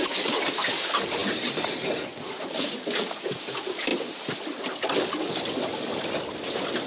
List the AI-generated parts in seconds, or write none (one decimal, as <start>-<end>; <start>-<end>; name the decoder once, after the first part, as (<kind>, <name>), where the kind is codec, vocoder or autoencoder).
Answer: none